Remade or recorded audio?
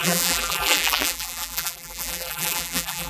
remade